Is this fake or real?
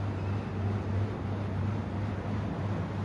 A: real